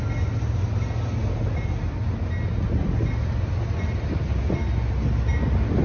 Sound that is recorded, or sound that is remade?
recorded